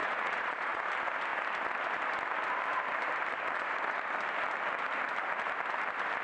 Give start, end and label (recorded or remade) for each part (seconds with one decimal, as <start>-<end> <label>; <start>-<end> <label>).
0.0-0.8 remade; 0.8-6.2 recorded